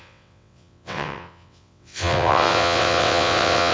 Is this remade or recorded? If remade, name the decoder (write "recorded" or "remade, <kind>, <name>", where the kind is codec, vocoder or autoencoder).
remade, vocoder, WaveNeXt